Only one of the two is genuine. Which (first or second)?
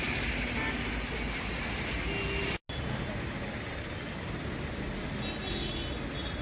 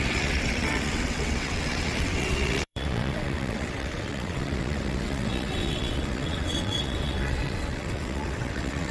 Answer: first